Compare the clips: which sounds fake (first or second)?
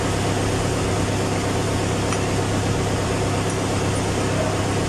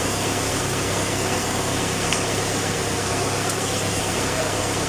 second